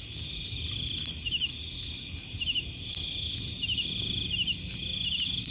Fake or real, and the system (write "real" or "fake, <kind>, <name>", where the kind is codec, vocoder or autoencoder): real